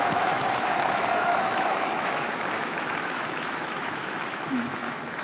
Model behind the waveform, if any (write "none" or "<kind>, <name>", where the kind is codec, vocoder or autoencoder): autoencoder, DAC-VAE